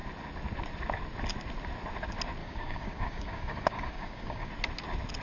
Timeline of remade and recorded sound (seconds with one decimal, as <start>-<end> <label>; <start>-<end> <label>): 0.0-2.4 recorded; 2.4-4.5 remade; 4.5-5.2 recorded